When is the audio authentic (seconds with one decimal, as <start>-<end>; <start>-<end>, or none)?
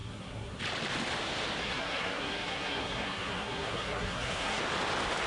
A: 0.6-1.6; 4.6-5.3